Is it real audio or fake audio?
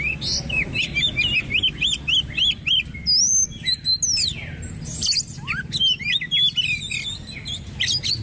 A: real